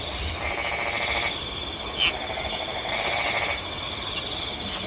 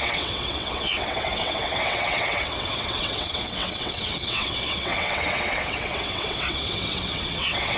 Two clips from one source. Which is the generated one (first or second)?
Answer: second